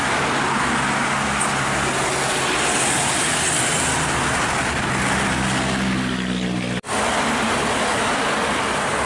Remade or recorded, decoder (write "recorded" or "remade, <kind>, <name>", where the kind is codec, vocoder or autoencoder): recorded